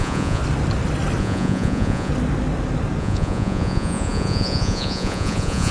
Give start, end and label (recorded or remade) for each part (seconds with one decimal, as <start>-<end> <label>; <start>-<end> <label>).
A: 0.0-0.4 remade; 0.4-1.2 recorded; 1.2-2.1 remade; 2.1-3.0 recorded; 3.0-5.7 remade